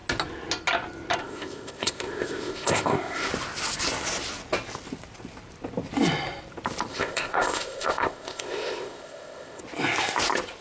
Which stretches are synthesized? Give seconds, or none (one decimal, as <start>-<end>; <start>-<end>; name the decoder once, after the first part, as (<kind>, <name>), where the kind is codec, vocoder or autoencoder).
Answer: 1.2-3.3 (codec, ZipCodec); 6.9-9.6